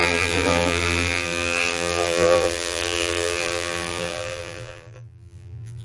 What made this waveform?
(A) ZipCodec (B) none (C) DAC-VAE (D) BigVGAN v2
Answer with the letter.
D